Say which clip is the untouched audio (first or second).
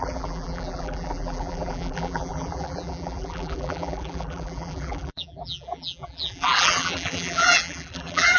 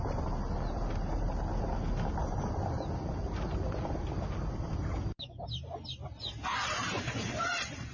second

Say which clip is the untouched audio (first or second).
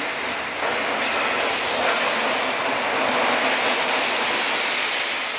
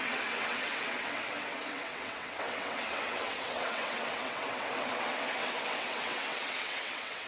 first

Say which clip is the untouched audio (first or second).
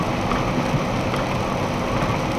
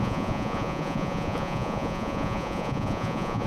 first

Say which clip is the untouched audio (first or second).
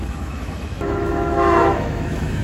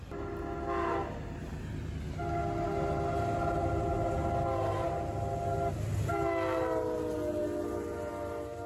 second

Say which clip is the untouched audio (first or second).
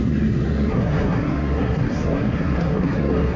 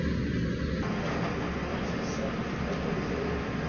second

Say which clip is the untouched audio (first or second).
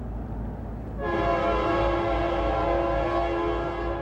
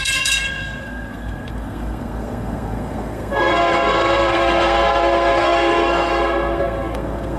first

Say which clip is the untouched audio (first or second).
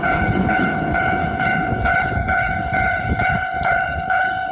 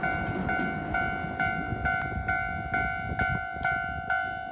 second